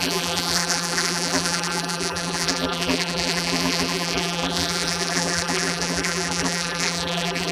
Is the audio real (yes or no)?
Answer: no